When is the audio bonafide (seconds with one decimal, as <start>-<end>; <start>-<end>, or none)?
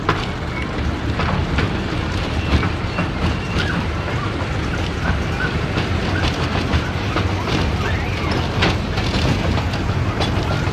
0.0-1.4; 3.9-10.7